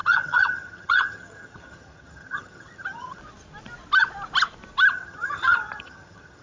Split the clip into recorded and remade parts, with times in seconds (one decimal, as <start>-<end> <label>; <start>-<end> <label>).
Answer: 0.0-3.2 remade; 3.2-4.9 recorded; 4.9-6.4 remade